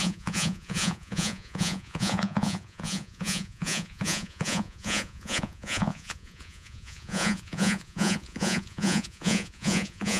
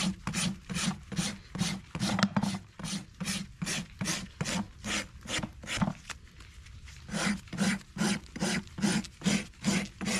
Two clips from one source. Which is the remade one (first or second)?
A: first